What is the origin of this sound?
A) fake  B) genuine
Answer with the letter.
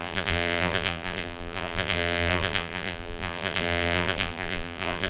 A